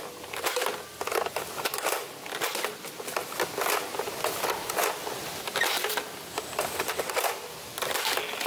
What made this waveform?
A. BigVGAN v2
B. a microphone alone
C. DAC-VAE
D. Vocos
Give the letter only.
B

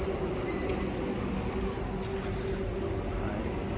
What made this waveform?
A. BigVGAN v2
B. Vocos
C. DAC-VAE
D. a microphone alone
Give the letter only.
D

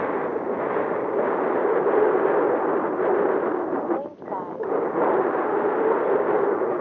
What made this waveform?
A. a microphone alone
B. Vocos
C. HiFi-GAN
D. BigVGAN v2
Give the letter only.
A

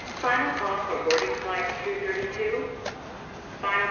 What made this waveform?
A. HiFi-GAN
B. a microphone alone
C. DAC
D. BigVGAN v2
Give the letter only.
B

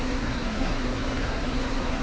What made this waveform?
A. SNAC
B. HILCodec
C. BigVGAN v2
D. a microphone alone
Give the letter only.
A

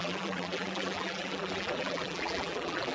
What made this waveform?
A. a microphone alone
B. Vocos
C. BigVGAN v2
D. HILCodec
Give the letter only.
C